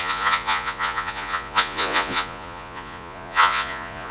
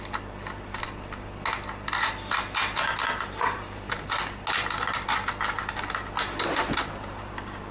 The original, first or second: second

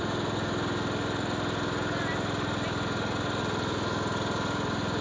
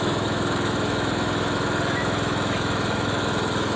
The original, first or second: first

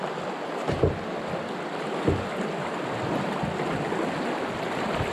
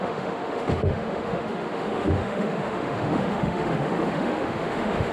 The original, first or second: first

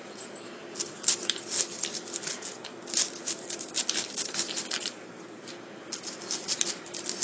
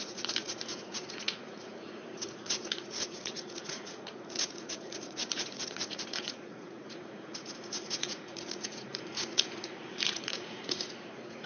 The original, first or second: first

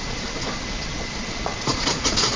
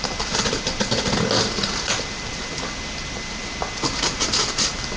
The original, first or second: second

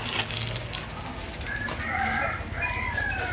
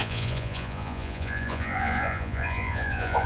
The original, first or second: first